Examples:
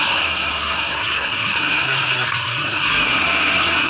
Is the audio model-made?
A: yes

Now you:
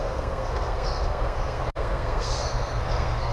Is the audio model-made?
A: yes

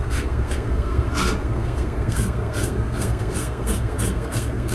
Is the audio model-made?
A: yes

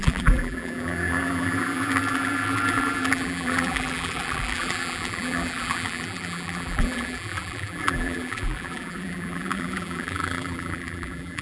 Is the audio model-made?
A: yes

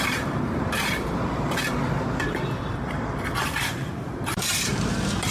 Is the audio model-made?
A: yes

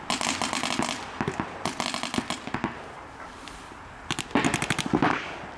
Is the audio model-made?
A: no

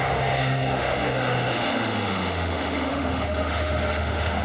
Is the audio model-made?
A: yes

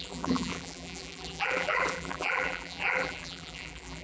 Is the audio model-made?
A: yes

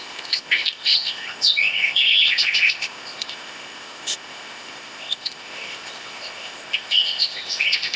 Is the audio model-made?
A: yes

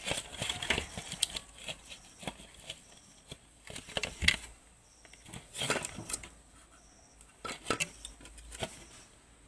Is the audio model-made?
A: no